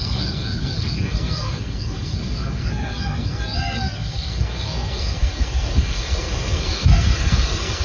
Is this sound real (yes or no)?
no